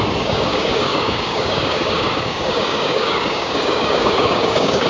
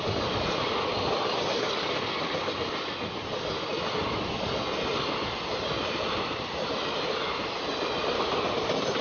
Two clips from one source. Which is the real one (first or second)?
second